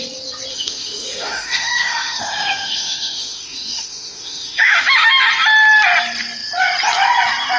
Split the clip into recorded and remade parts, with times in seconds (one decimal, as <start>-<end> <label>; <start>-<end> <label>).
0.0-0.5 recorded; 0.5-5.1 remade; 5.1-7.6 recorded